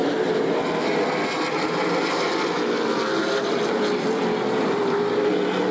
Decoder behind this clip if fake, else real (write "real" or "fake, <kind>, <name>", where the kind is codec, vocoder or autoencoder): real